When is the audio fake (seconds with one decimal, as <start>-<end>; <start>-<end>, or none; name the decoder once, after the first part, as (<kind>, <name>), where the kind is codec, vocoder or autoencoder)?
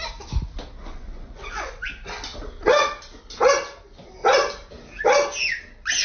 0.8-1.9 (vocoder, Vocos)